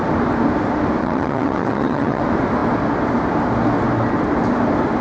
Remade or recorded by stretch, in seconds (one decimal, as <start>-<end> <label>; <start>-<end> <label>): 0.0-1.0 recorded; 1.0-2.2 remade; 2.2-5.0 recorded

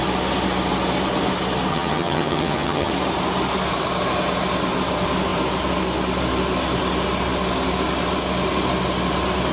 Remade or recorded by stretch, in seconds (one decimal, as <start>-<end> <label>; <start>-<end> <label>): 0.0-1.7 recorded; 1.7-2.9 remade; 2.9-9.5 recorded

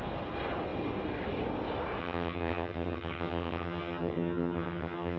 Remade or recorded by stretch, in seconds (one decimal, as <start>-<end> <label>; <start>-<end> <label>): 0.0-2.0 recorded; 2.0-5.2 remade

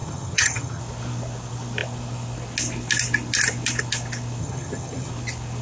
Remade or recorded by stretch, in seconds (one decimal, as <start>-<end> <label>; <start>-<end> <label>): 0.0-0.8 remade; 0.8-4.4 recorded; 4.4-5.1 remade; 5.1-5.6 recorded

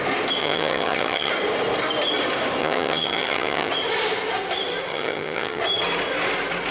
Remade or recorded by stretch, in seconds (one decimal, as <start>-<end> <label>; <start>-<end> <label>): 0.0-0.4 recorded; 0.4-1.3 remade; 1.3-2.6 recorded; 2.6-3.7 remade; 3.7-4.9 recorded; 4.9-5.6 remade; 5.6-6.7 recorded

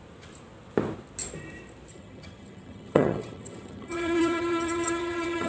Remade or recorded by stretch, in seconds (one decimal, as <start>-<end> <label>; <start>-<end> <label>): 0.0-1.9 recorded; 1.9-5.5 remade